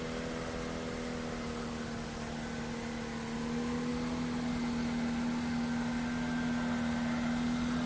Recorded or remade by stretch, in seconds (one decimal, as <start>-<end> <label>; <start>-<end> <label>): 0.0-7.9 recorded